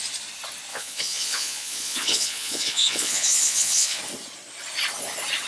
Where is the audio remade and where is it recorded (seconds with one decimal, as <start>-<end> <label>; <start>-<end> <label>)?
0.0-0.7 recorded; 0.7-4.0 remade; 4.0-5.5 recorded